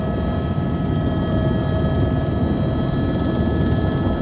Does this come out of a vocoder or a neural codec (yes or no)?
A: no